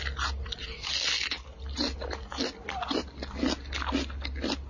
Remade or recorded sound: recorded